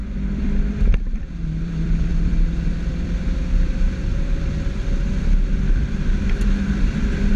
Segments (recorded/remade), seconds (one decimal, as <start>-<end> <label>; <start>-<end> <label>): 0.0-7.4 remade